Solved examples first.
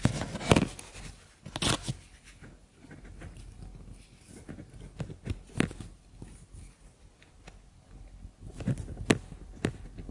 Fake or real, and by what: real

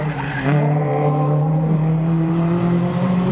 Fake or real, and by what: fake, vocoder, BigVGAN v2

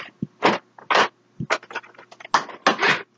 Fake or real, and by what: real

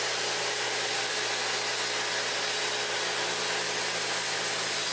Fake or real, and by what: real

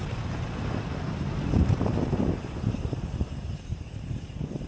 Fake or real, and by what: fake, vocoder, BigVGAN v2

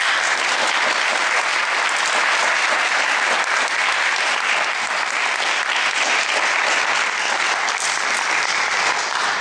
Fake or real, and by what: real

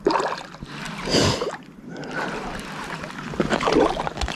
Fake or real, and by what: real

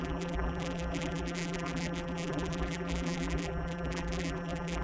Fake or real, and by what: fake, vocoder, BigVGAN v2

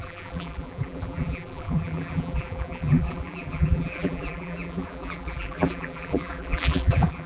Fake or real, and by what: fake, vocoder, BigVGAN v2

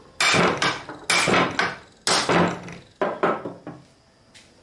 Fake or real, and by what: real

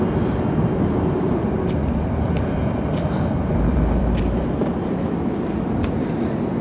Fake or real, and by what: fake, vocoder, BigVGAN v2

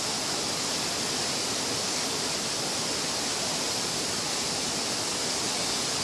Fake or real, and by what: real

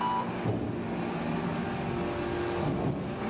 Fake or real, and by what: real